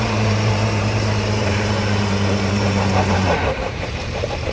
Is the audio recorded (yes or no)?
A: no